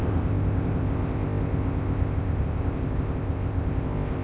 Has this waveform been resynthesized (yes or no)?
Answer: yes